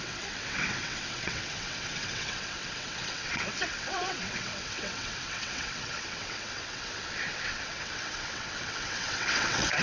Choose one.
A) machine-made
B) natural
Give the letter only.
A